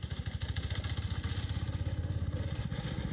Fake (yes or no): no